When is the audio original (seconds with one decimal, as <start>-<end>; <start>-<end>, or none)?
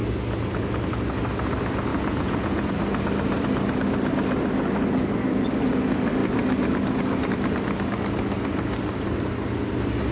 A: 0.0-1.9; 2.7-10.1